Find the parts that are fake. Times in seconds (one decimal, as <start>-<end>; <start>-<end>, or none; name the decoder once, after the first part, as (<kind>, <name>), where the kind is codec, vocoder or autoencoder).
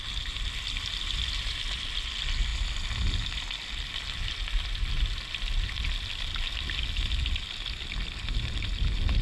none